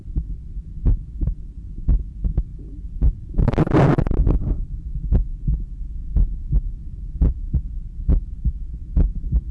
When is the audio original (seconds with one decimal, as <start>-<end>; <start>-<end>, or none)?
0.0-2.5; 3.7-6.0; 7.5-9.5

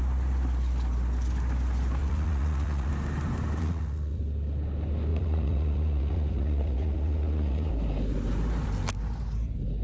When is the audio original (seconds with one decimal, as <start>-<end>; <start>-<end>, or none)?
0.0-2.0; 2.9-3.6; 4.2-5.1; 7.7-9.8

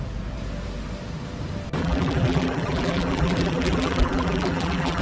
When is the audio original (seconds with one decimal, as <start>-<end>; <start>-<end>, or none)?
0.0-1.8

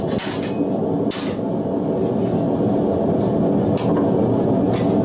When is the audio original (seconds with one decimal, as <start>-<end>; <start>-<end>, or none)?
0.0-5.0

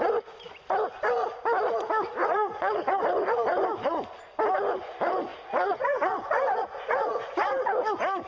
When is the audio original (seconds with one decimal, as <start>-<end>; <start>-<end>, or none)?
0.0-2.2; 2.9-5.3; 7.8-8.3

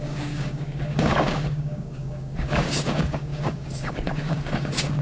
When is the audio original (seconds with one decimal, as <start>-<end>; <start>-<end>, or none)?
none